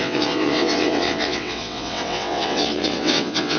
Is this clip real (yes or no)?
no